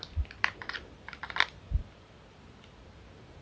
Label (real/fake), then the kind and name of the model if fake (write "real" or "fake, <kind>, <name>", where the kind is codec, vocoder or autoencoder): fake, vocoder, BigVGAN v2